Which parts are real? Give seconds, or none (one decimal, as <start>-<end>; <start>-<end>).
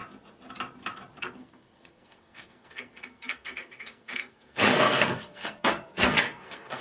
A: 0.0-1.2